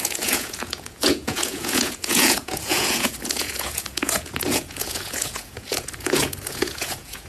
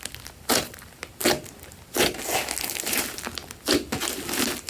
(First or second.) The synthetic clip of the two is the first